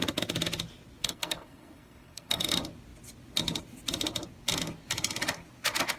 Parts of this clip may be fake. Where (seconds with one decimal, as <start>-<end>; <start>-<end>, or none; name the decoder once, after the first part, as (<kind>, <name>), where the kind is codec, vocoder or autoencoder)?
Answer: 1.0-2.5 (codec, SNAC)